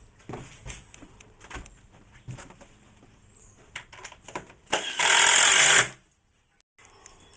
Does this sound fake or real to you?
real